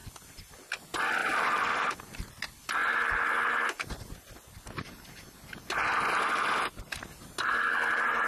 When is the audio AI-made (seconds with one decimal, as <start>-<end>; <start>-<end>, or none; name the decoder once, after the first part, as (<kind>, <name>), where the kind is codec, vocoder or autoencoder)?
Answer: none